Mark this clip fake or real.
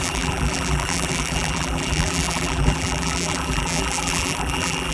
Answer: fake